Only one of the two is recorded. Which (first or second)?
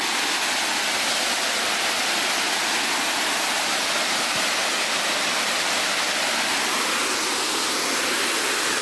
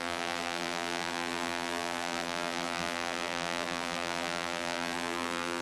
first